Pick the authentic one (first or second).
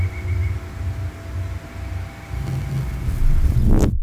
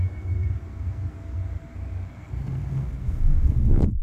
first